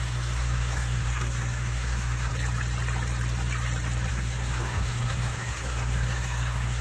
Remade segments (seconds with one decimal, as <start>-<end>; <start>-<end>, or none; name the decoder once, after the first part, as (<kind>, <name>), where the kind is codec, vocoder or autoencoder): 0.0-2.3 (codec, SNAC); 4.1-6.8